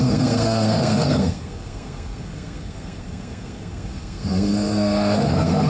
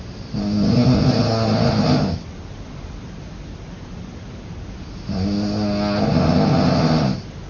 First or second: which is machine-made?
first